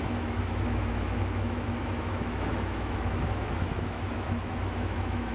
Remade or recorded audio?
remade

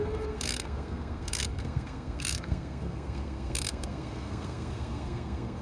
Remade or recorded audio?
remade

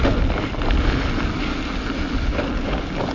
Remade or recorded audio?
recorded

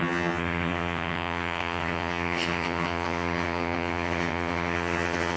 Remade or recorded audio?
remade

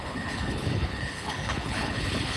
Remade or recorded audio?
remade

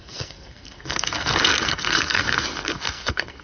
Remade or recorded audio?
remade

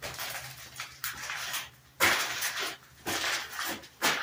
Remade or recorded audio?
remade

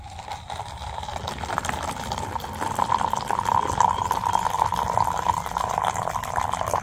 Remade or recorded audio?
recorded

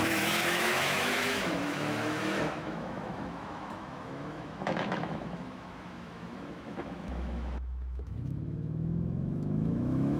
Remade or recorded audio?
remade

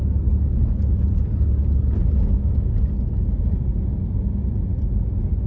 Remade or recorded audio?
recorded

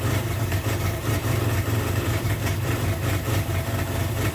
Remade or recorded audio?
remade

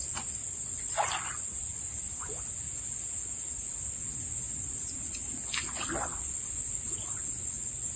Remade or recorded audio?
recorded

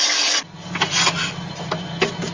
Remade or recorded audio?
recorded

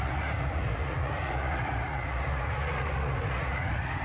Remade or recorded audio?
remade